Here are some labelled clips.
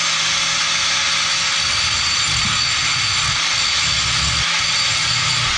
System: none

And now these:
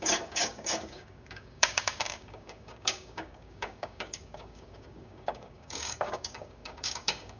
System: codec, DAC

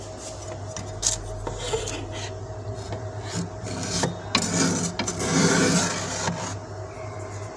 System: none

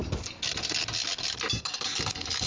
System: none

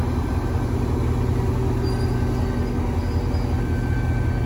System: none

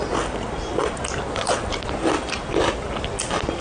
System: none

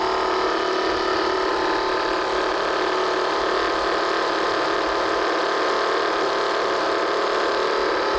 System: none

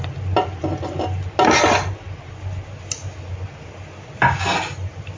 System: none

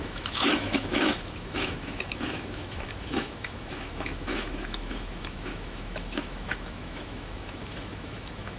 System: autoencoder, DAC-VAE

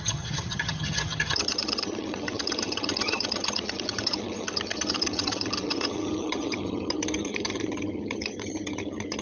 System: vocoder, HiFi-GAN